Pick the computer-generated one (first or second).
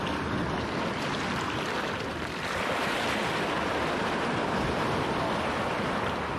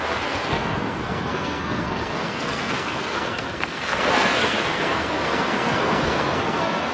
second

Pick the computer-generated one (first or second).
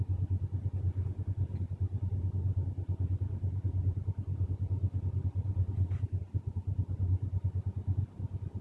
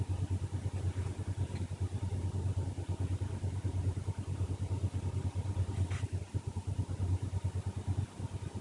second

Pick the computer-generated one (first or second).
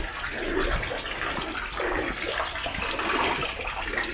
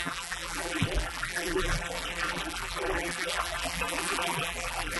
second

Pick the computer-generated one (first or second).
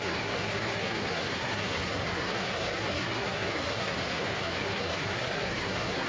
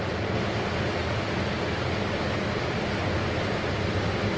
first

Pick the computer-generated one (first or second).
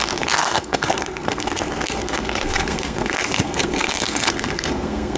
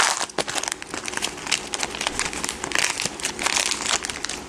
first